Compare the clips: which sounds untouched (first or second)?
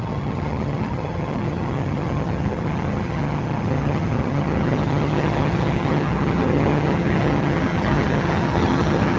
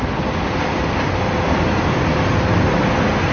second